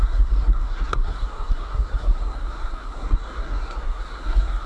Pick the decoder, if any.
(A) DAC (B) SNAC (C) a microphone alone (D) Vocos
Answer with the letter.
B